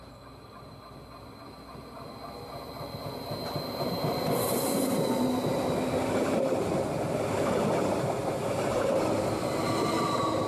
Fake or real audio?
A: real